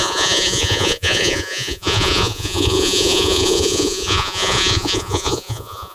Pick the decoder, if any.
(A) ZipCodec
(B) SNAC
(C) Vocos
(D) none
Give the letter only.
C